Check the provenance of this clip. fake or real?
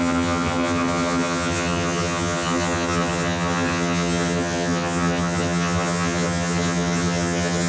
fake